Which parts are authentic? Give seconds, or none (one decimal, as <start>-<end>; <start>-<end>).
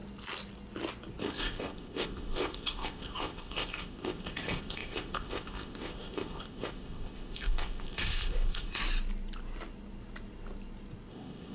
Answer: 0.0-1.2; 8.8-11.1